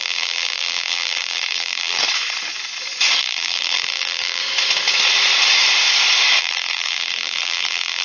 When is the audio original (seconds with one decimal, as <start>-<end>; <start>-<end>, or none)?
2.0-3.2; 4.4-6.4